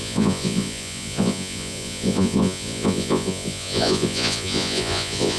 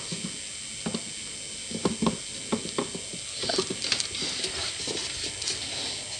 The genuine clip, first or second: second